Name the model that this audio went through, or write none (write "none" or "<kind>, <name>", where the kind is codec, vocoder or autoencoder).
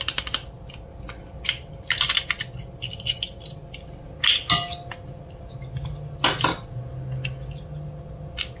none